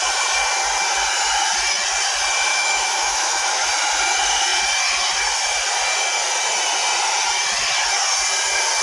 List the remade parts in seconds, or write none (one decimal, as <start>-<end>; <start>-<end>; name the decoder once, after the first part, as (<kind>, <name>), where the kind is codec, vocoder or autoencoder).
2.5-3.7 (autoencoder, DAC-VAE)